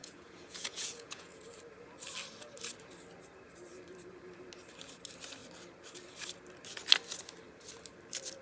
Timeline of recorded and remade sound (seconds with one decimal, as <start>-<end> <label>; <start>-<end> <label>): 0.0-1.4 remade; 1.4-8.4 recorded